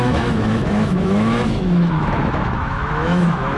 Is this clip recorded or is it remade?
remade